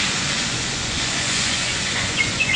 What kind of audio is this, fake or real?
fake